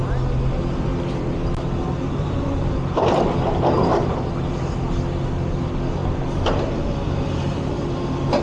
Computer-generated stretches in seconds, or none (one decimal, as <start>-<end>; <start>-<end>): none